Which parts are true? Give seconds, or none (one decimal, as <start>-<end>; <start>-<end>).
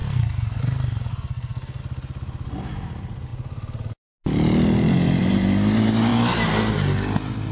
0.6-1.1; 1.8-7.5